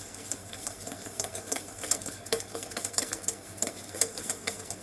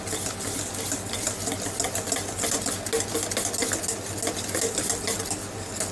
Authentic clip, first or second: second